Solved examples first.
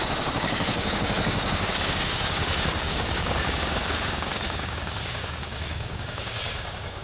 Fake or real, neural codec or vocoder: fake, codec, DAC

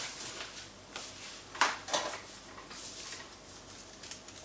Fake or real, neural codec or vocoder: real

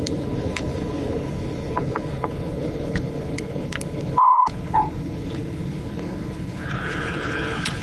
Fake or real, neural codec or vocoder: fake, codec, HILCodec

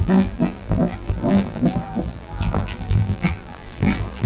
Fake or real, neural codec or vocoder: fake, vocoder, BigVGAN v2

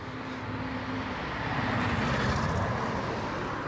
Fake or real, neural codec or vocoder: real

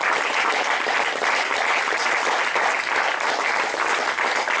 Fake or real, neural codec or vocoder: real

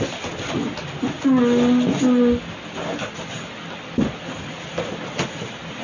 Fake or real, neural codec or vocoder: real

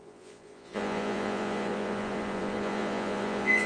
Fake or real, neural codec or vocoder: fake, vocoder, Vocos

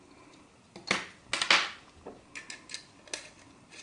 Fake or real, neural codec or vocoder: real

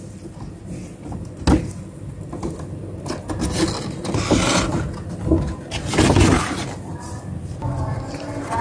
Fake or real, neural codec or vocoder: real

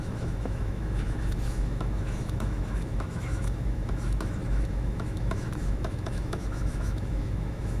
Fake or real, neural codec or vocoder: fake, autoencoder, DAC-VAE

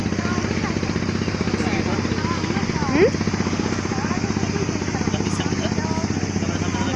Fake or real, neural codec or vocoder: real